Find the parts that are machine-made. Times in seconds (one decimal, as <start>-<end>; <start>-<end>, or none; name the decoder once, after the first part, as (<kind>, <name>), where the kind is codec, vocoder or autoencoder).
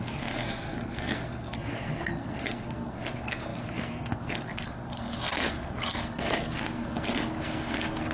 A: 0.0-8.1 (codec, SNAC)